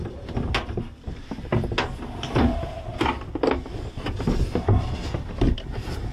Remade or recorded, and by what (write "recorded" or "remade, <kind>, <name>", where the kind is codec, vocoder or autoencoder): recorded